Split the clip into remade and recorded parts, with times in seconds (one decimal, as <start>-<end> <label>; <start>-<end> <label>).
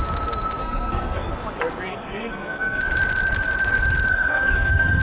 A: 0.0-0.6 recorded; 0.6-1.3 remade; 1.3-1.9 recorded; 1.9-2.8 remade; 2.8-4.1 recorded; 4.1-5.0 remade